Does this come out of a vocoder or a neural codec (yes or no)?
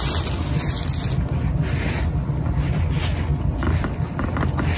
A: no